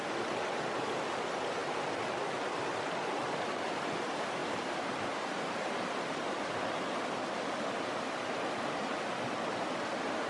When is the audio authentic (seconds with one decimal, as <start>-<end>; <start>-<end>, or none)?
0.0-10.3